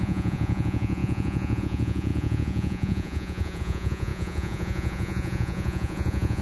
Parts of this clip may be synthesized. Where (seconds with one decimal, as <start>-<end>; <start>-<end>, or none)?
0.0-6.4